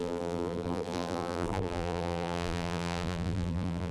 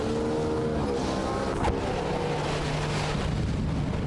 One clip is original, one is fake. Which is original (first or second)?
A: second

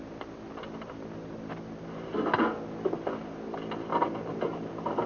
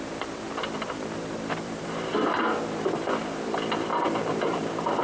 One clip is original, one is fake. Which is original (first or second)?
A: first